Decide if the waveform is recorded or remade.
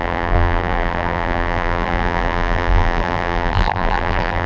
remade